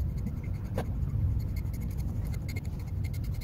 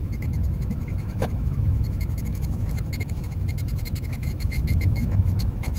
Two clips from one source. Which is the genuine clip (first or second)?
first